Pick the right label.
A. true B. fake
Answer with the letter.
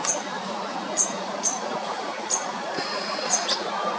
B